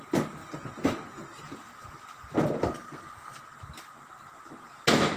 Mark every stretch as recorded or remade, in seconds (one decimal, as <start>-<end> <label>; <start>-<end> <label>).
0.0-2.6 recorded; 2.6-3.4 remade; 3.4-5.2 recorded